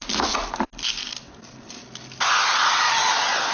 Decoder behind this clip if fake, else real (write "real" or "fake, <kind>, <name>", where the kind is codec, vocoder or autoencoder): real